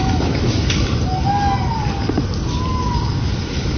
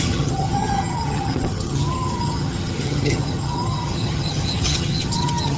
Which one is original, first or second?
first